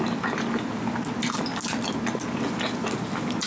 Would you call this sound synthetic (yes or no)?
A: no